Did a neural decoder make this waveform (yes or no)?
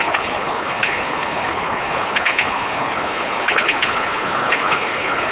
yes